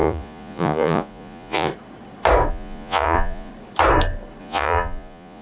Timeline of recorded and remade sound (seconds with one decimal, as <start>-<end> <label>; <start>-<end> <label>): 0.0-1.7 remade; 1.7-2.5 recorded; 2.5-3.5 remade; 3.5-4.4 recorded; 4.4-5.4 remade